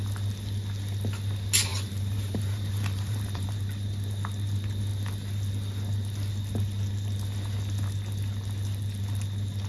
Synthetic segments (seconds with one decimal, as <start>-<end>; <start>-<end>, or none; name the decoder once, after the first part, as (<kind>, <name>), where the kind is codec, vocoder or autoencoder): 1.7-3.5 (vocoder, BigVGAN v2)